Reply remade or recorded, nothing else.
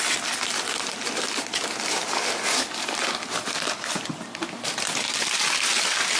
recorded